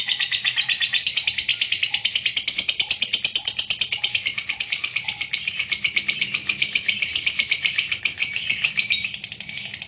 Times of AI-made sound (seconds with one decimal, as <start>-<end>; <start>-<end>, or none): 0.0-8.2; 9.3-9.9